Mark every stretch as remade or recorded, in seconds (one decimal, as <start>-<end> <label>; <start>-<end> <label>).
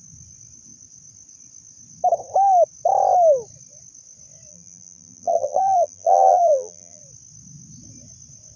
0.0-4.5 recorded; 4.5-7.0 remade; 7.0-8.6 recorded